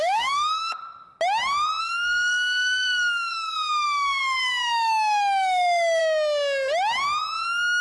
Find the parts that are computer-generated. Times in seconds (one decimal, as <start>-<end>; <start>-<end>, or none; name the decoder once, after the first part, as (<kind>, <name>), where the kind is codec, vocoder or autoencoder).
0.0-0.8 (codec, DAC); 1.8-6.0